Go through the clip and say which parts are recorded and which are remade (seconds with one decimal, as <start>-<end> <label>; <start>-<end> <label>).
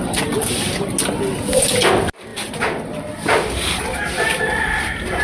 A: 0.0-5.2 recorded